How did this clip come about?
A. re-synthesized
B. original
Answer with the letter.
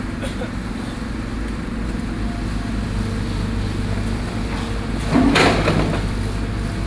B